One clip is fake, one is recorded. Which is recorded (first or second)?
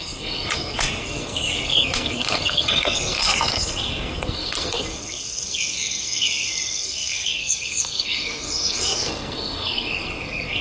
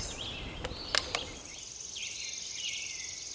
second